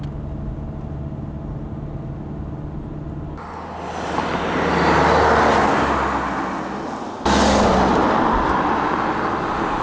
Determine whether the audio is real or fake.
real